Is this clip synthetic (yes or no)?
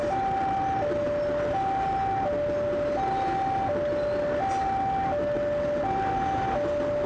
no